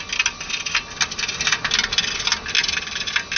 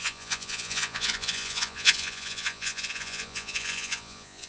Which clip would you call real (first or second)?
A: first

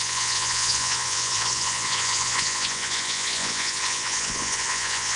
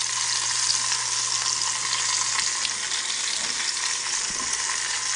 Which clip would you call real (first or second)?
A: second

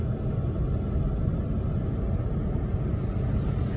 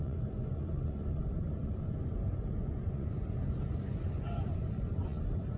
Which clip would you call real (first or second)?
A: first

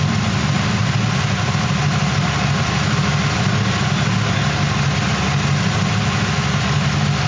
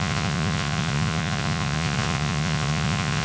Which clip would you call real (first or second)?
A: first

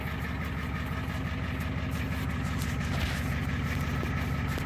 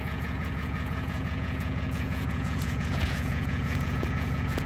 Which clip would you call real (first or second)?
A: first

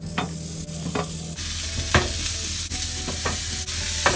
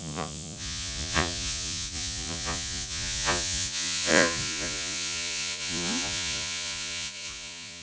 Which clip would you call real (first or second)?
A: first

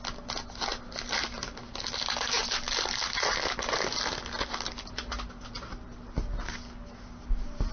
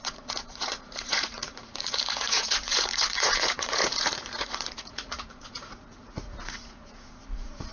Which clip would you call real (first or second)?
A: first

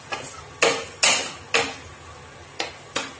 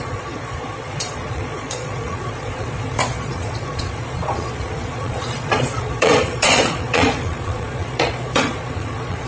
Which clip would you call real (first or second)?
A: first